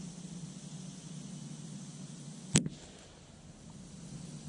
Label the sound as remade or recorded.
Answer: recorded